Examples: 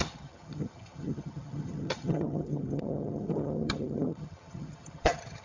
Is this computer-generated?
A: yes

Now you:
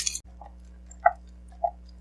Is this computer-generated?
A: no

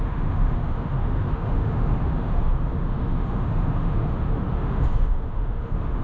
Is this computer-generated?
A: yes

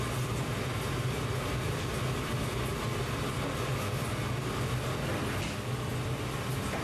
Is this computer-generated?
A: no